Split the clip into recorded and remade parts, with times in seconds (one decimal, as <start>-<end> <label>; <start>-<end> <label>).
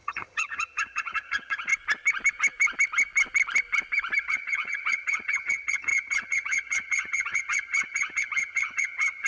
0.0-1.7 remade; 1.7-4.2 recorded; 4.2-9.3 remade